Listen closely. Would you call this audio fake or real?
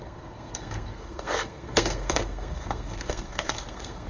fake